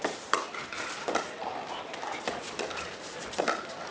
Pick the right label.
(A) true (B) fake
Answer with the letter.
A